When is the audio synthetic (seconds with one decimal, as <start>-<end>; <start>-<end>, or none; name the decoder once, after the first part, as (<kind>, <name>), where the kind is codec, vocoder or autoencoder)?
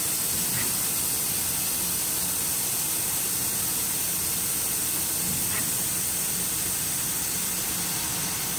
none